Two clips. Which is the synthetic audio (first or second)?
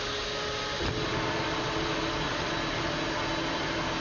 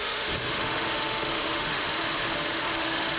second